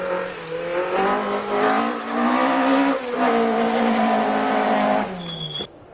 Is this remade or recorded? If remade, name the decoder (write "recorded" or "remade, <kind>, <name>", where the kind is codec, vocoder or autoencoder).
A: recorded